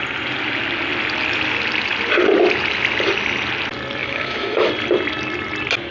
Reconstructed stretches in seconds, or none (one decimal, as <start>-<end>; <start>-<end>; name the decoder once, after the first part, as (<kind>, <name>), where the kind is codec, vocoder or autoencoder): 4.0-4.7 (autoencoder, DAC-VAE)